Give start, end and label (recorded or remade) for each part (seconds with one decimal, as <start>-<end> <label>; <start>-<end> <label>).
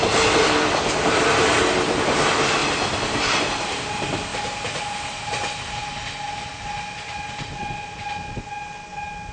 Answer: 0.0-2.6 remade; 2.6-3.4 recorded; 3.4-4.3 remade; 4.3-4.8 recorded; 4.8-5.8 remade; 5.8-9.3 recorded